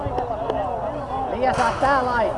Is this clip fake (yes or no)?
no